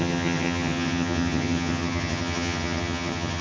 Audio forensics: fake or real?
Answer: fake